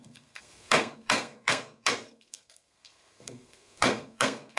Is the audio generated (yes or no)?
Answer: yes